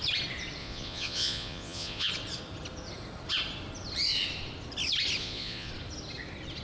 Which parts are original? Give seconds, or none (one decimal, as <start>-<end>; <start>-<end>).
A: 0.0-0.6; 2.1-5.2; 5.7-6.6